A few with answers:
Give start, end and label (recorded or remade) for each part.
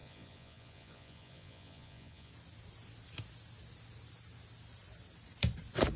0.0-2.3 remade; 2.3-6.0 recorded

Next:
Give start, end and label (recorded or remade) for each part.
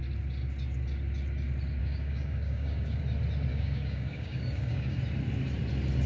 0.0-1.8 recorded; 1.8-3.0 remade; 3.0-3.5 recorded; 3.5-5.0 remade; 5.0-6.1 recorded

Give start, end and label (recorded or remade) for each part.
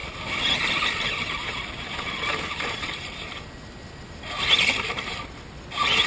0.0-6.1 recorded